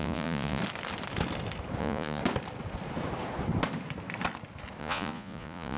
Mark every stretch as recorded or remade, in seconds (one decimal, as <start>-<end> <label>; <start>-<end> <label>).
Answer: 0.0-0.6 remade; 0.6-1.8 recorded; 1.8-2.2 remade; 2.2-4.8 recorded; 4.8-5.8 remade